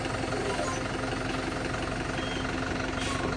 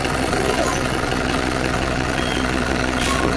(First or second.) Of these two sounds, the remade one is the second